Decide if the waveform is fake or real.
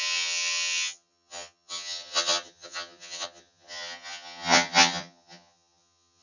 fake